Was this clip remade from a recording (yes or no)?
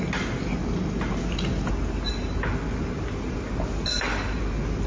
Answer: no